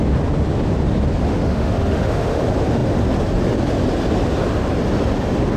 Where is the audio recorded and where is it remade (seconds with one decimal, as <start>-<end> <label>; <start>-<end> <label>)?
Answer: 0.0-1.3 recorded; 1.3-2.4 remade; 2.4-5.6 recorded